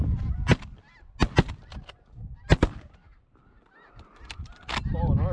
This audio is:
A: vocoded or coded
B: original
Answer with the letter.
B